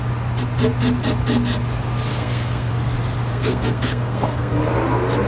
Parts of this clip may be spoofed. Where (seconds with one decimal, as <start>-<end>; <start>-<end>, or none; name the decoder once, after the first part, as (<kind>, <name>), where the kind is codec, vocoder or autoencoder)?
2.1-2.7 (codec, SNAC); 3.3-4.6